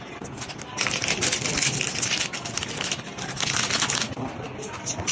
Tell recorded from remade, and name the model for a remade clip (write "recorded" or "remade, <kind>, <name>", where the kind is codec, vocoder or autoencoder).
recorded